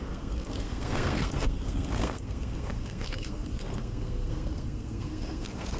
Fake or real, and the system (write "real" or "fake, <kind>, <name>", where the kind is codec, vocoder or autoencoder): fake, codec, SNAC